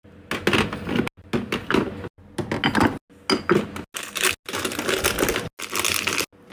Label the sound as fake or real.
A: real